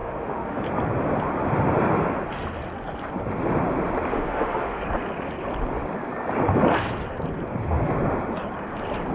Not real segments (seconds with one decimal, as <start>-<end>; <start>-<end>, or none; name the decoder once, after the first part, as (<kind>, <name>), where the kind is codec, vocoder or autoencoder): 0.0-0.6 (autoencoder, DAC-VAE); 4.1-4.8